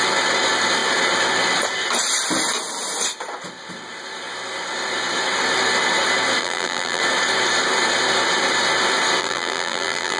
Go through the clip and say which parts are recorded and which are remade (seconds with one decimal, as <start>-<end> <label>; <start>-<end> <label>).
0.0-6.4 recorded; 6.4-7.0 remade; 7.0-9.2 recorded; 9.2-10.2 remade

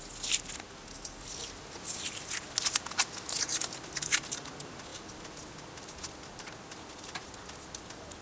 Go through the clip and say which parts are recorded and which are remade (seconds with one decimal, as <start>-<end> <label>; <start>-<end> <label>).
0.0-1.4 recorded; 1.4-2.3 remade; 2.3-8.2 recorded